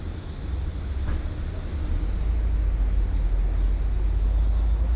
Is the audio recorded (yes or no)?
yes